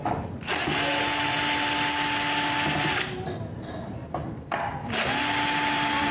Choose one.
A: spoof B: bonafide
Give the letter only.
B